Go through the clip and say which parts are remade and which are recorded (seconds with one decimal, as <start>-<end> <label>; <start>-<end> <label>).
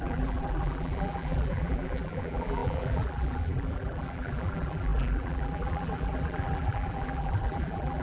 0.0-8.0 remade